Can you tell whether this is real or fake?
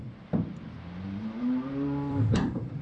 fake